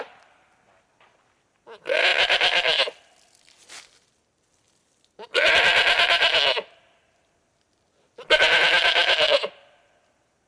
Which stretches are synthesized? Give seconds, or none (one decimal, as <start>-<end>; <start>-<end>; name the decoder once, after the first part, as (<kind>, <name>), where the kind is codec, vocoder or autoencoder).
none